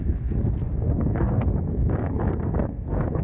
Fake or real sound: fake